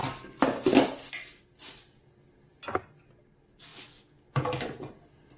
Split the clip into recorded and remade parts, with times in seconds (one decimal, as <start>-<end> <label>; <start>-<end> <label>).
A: 0.0-5.4 recorded